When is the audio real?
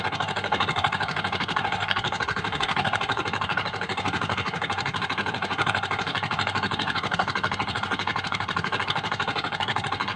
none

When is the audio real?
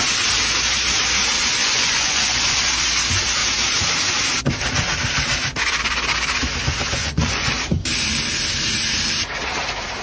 0.0-1.6; 2.7-7.0; 7.5-10.0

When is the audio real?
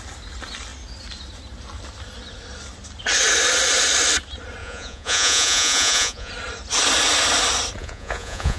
0.0-4.6; 6.3-7.8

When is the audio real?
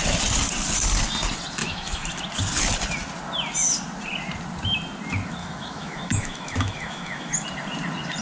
0.0-1.6; 2.1-5.4; 7.3-8.2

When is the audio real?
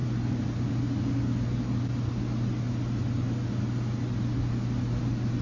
0.0-5.4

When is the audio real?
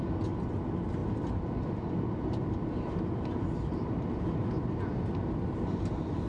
0.0-6.3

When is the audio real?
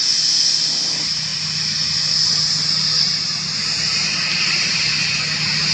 0.0-5.7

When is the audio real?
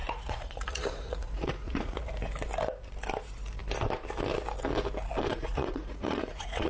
2.1-5.3